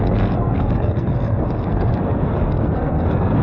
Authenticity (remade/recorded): remade